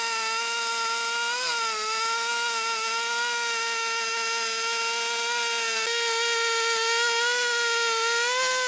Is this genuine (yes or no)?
yes